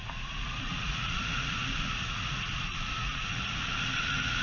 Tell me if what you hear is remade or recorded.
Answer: remade